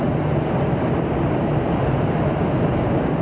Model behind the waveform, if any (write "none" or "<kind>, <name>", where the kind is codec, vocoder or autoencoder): none